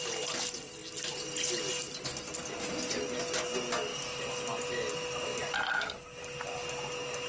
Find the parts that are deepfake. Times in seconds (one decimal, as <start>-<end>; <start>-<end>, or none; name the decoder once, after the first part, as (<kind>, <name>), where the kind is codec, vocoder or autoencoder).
none